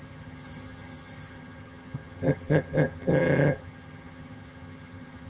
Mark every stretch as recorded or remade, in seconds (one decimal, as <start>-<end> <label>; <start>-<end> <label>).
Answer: 0.0-5.3 remade